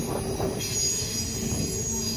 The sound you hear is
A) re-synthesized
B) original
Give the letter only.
B